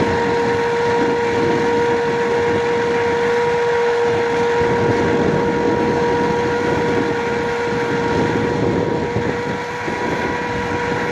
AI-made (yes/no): no